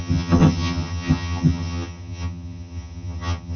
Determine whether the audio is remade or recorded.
remade